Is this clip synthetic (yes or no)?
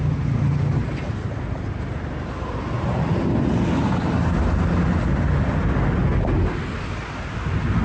no